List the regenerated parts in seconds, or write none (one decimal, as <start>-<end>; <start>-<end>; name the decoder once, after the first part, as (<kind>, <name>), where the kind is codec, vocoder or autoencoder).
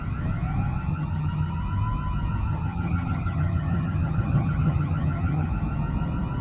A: 0.9-1.6 (vocoder, HiFi-GAN); 2.5-5.5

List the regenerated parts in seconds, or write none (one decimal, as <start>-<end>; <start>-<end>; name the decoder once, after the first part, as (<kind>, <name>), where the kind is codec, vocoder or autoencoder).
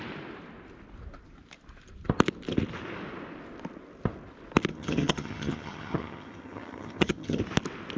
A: 4.7-7.4 (vocoder, HiFi-GAN)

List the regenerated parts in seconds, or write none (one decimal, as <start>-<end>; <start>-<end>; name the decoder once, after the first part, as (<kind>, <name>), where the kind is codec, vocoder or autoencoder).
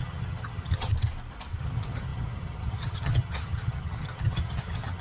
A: 0.0-0.9 (vocoder, HiFi-GAN); 1.6-5.0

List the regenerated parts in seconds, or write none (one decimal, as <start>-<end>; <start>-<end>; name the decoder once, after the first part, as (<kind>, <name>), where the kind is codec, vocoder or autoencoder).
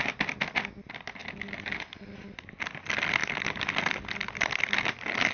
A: none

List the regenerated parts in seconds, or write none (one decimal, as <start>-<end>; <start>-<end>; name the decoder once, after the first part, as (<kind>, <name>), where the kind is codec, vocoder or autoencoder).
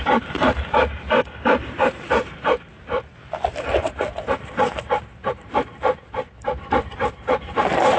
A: none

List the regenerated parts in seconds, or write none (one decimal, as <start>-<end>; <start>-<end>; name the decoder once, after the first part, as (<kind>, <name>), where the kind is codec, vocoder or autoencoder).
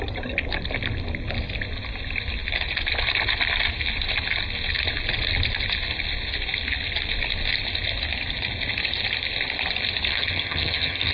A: 10.1-11.1 (vocoder, HiFi-GAN)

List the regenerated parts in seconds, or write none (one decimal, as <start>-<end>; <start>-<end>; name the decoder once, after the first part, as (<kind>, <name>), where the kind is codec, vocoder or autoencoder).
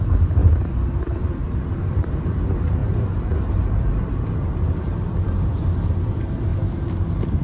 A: none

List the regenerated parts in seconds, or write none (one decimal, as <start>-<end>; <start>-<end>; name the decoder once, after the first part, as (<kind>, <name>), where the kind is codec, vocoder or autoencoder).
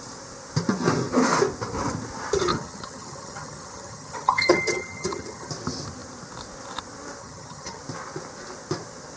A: 2.5-5.5 (vocoder, HiFi-GAN); 7.2-7.8